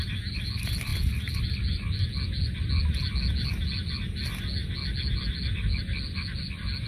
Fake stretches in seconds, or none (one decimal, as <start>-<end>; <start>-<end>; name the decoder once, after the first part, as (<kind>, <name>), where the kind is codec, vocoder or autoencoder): none